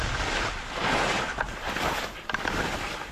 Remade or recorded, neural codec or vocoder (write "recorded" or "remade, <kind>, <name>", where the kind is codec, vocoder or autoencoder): recorded